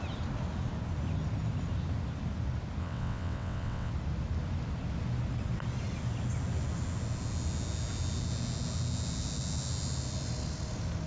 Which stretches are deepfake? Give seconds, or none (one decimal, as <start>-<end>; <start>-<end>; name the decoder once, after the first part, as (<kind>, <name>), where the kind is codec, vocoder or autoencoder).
2.8-3.9 (vocoder, WaveNeXt)